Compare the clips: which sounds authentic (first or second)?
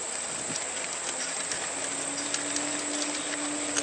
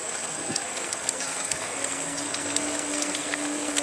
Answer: first